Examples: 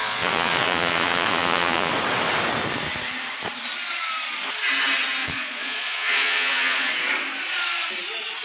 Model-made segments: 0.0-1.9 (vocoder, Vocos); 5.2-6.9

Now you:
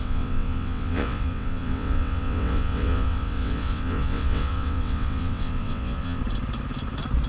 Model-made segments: 0.0-6.2 (vocoder, WaveNeXt)

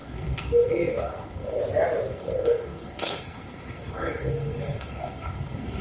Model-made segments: 0.0-1.6 (codec, SNAC); 2.1-5.8